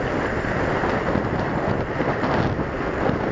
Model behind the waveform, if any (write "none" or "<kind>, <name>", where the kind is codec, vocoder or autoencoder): none